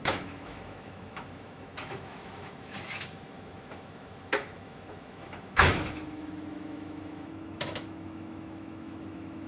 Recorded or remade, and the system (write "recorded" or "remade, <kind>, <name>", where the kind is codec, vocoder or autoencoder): remade, autoencoder, DAC-VAE